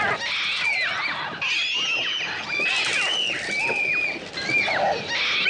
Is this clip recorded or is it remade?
recorded